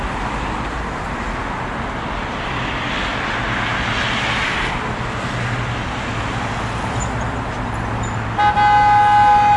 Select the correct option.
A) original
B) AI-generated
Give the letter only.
A